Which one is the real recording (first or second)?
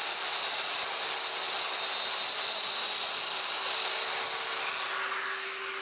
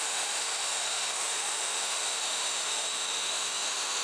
first